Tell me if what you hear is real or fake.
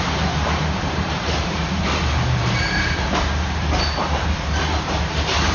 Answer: fake